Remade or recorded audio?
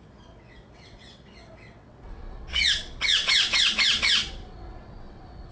remade